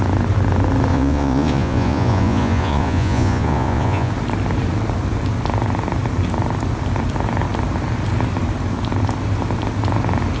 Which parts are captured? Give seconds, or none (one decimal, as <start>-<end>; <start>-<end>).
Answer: 0.0-0.9; 4.1-10.4